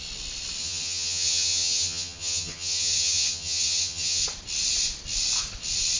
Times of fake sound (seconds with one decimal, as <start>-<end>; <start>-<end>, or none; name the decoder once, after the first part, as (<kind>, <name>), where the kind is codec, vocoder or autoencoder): 0.6-4.2 (vocoder, HiFi-GAN)